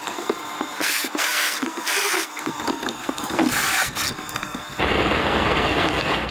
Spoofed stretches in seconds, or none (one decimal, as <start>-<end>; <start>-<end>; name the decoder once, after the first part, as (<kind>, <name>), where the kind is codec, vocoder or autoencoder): 0.0-6.3 (codec, SNAC)